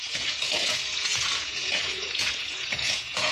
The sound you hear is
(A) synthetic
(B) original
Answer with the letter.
A